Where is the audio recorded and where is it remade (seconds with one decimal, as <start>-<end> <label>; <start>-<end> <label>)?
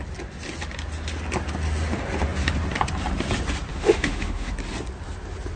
0.0-3.7 recorded; 3.7-4.5 remade; 4.5-5.6 recorded